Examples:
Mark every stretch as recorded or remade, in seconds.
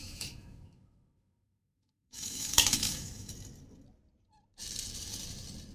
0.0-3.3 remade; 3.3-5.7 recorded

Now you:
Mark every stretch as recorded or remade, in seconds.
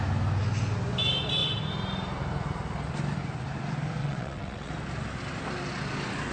0.0-4.0 recorded; 4.0-4.7 remade; 4.7-6.3 recorded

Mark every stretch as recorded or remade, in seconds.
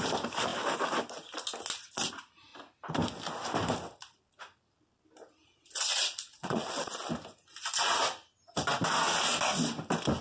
0.0-5.4 recorded; 5.4-6.8 remade; 6.8-10.2 recorded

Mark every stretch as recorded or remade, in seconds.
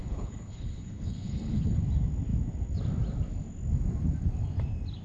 0.0-1.8 remade; 1.8-5.0 recorded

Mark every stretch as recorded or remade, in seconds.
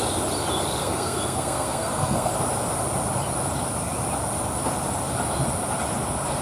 0.0-0.8 recorded; 0.8-2.3 remade; 2.3-6.4 recorded